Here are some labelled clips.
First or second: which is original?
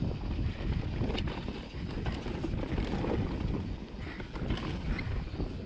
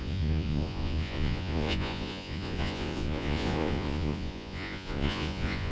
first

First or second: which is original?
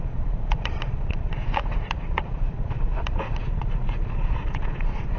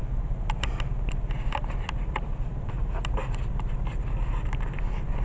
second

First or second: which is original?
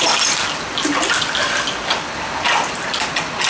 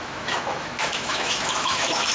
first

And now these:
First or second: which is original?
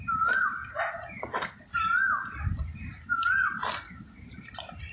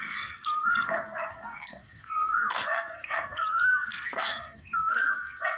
first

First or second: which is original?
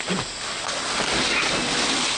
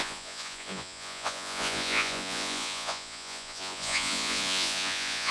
first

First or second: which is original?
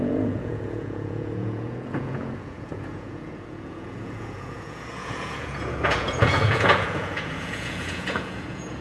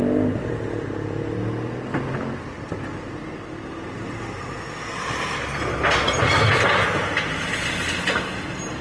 second